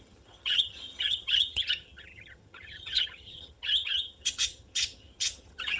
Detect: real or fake fake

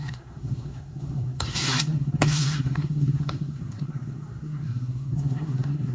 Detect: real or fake fake